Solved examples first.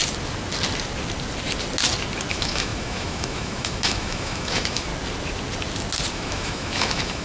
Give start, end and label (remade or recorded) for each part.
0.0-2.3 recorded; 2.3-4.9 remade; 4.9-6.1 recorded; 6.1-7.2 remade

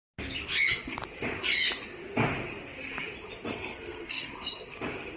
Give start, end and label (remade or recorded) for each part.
0.0-3.5 recorded; 3.5-4.3 remade; 4.3-5.2 recorded

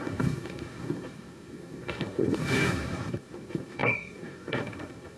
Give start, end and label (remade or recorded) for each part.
0.0-5.2 remade